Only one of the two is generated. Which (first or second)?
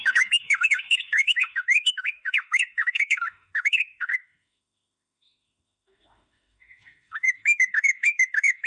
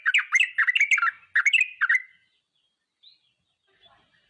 first